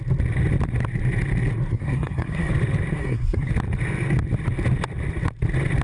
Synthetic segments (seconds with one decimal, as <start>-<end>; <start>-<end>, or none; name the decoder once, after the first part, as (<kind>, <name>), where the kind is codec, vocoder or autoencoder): 1.7-2.5 (codec, SNAC); 2.9-3.5